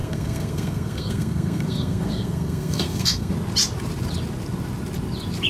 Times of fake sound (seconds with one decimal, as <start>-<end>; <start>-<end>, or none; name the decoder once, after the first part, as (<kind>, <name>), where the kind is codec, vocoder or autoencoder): 0.0-3.3 (codec, SNAC)